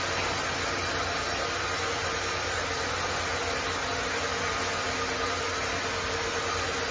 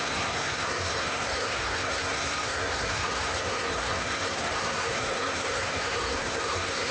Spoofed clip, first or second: second